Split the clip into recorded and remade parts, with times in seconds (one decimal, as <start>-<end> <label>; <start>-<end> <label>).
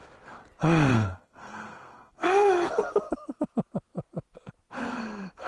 0.0-0.9 recorded; 0.9-3.4 remade; 3.4-4.9 recorded; 4.9-5.5 remade